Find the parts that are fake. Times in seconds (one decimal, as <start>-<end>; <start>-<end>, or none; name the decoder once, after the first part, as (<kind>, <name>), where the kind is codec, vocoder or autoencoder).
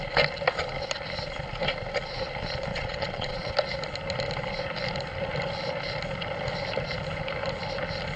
2.7-3.5 (vocoder, Vocos)